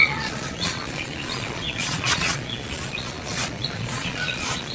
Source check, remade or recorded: remade